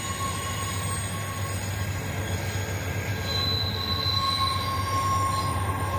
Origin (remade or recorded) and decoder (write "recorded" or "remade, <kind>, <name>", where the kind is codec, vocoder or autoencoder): recorded